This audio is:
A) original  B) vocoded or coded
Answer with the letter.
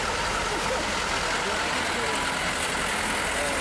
A